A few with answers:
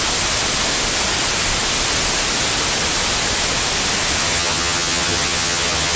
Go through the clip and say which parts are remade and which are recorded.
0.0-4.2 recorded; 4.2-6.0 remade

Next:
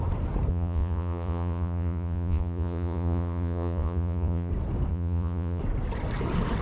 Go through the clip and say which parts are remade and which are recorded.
0.0-0.5 recorded; 0.5-4.5 remade; 4.5-4.9 recorded; 4.9-5.6 remade; 5.6-6.6 recorded

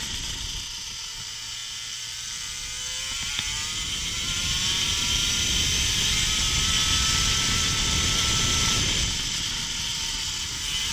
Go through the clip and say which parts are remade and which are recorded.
0.0-1.6 recorded; 1.6-2.6 remade; 2.6-10.9 recorded

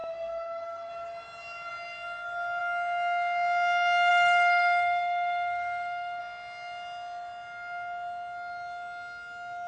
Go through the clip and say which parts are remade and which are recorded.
0.0-0.9 remade; 0.9-4.1 recorded; 4.1-6.2 remade; 6.2-9.7 recorded